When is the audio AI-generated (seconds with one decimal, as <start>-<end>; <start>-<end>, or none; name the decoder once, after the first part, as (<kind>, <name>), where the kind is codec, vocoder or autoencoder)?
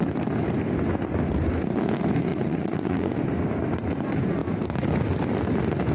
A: 2.3-3.2 (vocoder, Vocos)